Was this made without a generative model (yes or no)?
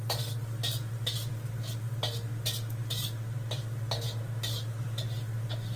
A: yes